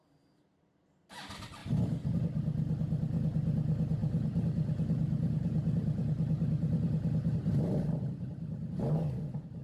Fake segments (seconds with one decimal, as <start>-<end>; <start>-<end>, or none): 1.6-2.1; 4.0-8.8